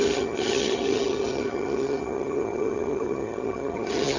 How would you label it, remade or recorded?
remade